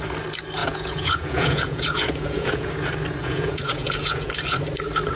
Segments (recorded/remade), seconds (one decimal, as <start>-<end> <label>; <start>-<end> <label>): 0.0-0.6 recorded; 0.6-2.7 remade; 2.7-3.2 recorded; 3.2-4.3 remade; 4.3-5.2 recorded